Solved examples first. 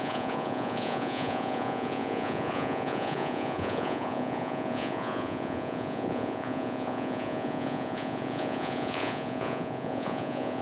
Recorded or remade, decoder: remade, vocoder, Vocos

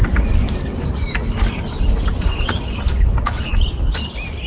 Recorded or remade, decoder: recorded